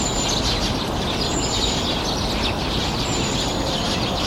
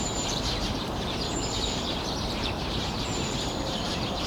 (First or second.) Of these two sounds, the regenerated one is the second